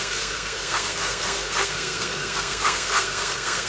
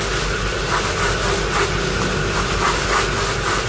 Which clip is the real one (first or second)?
second